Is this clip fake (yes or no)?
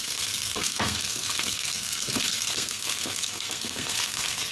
yes